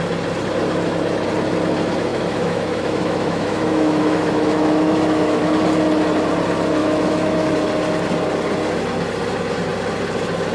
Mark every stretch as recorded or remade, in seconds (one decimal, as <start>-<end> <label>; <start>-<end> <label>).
0.0-2.1 recorded; 2.1-5.4 remade; 5.4-6.8 recorded; 6.8-7.5 remade; 7.5-10.5 recorded

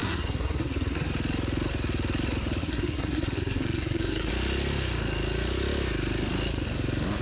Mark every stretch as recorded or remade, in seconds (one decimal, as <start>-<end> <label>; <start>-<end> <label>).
0.0-1.1 remade; 1.1-2.6 recorded; 2.6-4.3 remade; 4.3-7.2 recorded

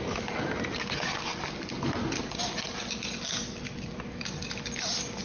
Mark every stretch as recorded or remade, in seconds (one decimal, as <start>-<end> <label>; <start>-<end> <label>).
0.0-5.2 recorded

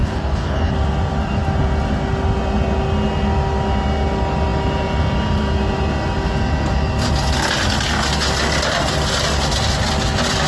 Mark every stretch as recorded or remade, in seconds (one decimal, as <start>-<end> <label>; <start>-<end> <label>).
0.0-0.7 remade; 0.7-10.5 recorded

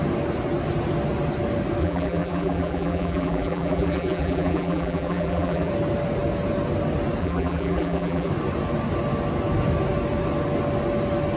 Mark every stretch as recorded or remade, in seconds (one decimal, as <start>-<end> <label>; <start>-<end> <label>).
0.0-1.8 recorded; 1.8-5.7 remade; 5.7-7.2 recorded; 7.2-8.3 remade; 8.3-11.4 recorded